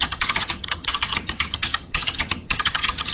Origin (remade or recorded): remade